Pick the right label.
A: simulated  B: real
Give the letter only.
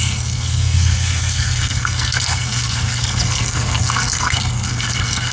A